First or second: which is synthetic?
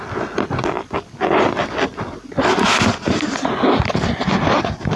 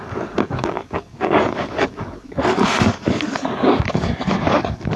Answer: second